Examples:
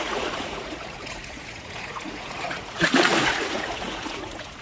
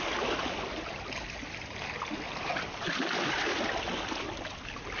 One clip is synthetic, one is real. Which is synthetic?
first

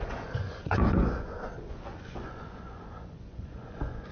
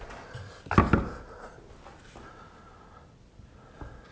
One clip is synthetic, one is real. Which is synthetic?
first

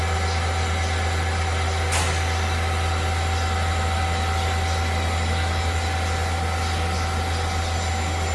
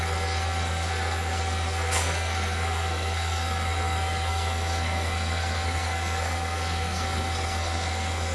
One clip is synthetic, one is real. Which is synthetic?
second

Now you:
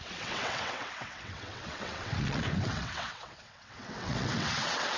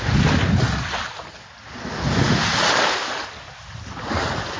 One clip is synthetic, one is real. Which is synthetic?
first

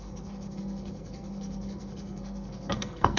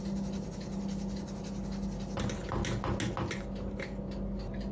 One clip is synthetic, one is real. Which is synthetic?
first